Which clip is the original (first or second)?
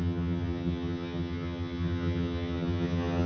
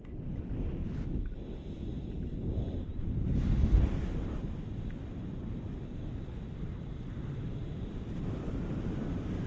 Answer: second